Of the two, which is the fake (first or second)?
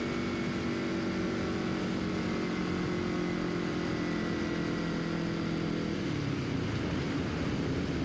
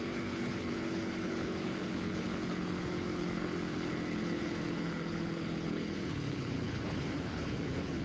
second